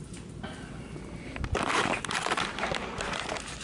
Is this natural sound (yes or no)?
yes